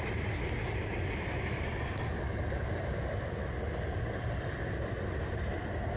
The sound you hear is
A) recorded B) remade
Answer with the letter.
A